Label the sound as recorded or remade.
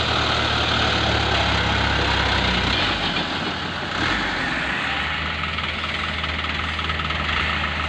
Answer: recorded